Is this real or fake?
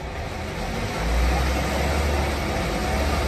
real